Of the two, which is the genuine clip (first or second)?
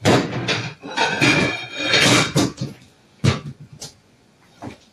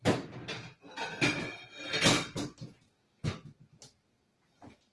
second